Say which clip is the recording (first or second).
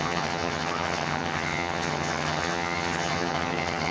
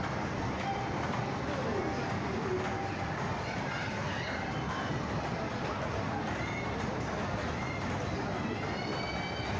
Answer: second